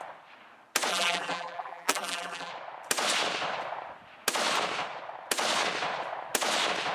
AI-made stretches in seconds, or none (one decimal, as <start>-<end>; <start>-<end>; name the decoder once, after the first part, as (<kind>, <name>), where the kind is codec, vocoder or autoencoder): 0.9-2.5 (vocoder, BigVGAN v2)